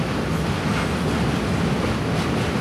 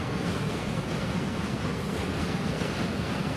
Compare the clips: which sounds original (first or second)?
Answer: first